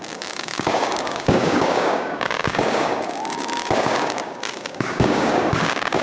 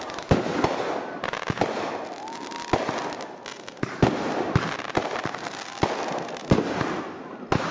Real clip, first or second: second